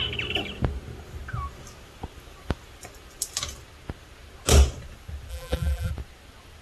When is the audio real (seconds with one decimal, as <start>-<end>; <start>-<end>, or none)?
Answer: 0.0-5.3; 5.9-6.6